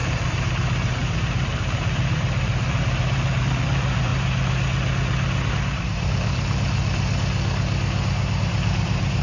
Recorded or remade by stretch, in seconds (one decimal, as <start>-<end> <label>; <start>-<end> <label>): 0.0-4.1 remade; 4.1-5.5 recorded; 5.5-6.8 remade; 6.8-8.4 recorded; 8.4-9.2 remade